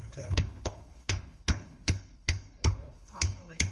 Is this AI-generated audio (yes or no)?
yes